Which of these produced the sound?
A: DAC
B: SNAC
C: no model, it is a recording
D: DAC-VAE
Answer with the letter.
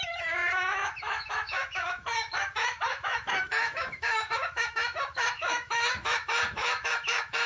D